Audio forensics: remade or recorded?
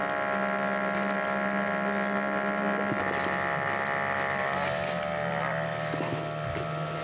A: recorded